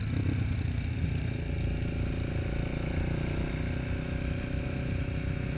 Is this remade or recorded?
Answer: recorded